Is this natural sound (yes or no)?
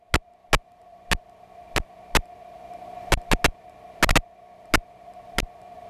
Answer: yes